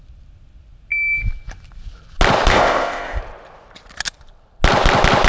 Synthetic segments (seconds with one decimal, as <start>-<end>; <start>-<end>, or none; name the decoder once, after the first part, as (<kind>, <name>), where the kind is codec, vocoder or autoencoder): 2.5-3.2 (codec, ZipCodec)